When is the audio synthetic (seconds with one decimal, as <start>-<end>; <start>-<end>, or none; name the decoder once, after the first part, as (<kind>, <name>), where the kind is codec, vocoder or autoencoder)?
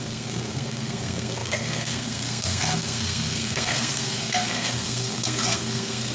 0.0-6.1 (codec, SNAC)